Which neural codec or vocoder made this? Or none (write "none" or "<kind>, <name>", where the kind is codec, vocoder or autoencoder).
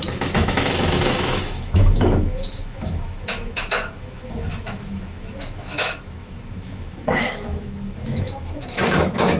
autoencoder, DAC-VAE